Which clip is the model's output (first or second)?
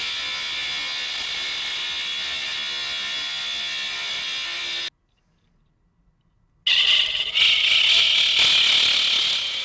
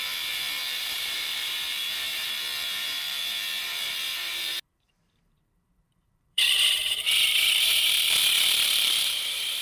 second